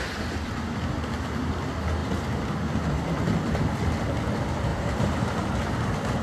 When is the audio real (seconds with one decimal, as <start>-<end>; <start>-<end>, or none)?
0.0-4.7; 5.7-6.2